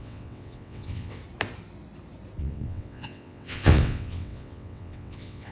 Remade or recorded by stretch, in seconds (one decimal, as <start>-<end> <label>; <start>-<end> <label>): 0.0-1.2 remade; 1.2-2.4 recorded; 2.4-5.5 remade